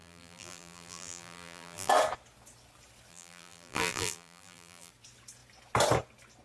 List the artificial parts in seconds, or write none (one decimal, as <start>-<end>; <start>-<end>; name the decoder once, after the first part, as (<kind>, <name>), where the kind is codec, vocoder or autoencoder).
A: 0.0-1.9 (vocoder, BigVGAN v2); 3.1-4.9